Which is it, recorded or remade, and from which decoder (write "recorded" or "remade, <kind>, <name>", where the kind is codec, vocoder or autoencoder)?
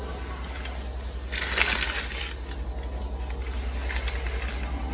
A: recorded